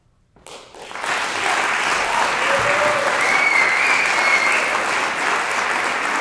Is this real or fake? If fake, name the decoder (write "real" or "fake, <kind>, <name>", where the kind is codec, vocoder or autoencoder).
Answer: real